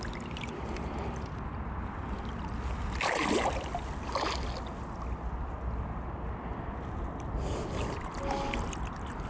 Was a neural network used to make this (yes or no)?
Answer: no